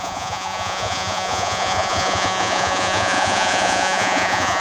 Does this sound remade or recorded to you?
remade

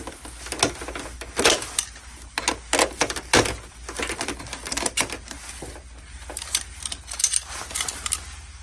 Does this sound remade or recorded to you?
recorded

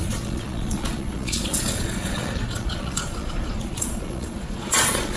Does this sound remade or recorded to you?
remade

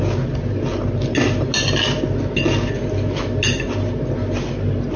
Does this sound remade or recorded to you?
recorded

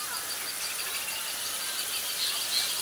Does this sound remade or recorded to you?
recorded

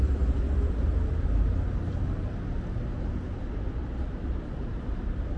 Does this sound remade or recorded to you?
recorded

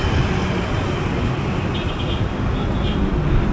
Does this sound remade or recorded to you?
recorded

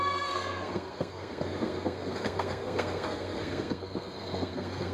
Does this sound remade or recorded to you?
remade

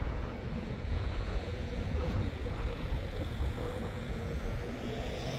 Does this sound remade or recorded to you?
remade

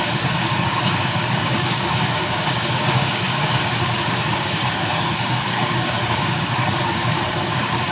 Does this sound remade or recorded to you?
remade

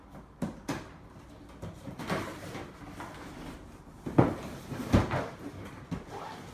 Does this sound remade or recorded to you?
recorded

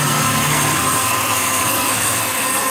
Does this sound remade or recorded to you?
remade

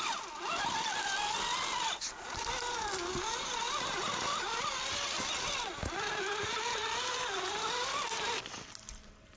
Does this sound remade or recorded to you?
recorded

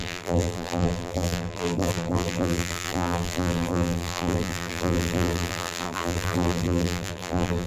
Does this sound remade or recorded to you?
remade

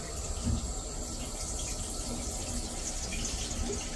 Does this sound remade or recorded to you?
recorded